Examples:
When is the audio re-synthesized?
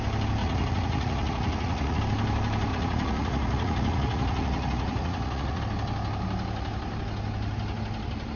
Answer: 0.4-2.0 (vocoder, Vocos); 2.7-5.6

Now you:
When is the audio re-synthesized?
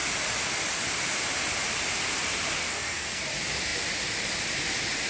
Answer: 2.6-3.2 (codec, SNAC)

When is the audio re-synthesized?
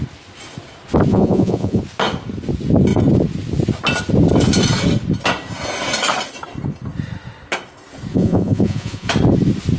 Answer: 1.1-1.8 (vocoder, Vocos); 8.1-9.1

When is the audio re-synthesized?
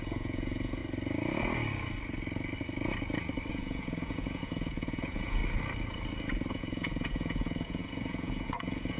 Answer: 0.0-0.8 (vocoder, Vocos); 3.5-5.4; 6.5-9.0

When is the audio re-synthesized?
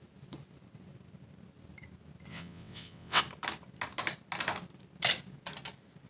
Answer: 2.3-3.2 (vocoder, WaveNeXt)